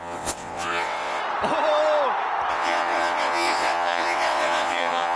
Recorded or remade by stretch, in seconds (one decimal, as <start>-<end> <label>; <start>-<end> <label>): 0.0-1.2 remade; 1.2-2.5 recorded; 2.5-5.2 remade